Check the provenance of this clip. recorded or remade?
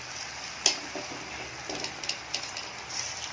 recorded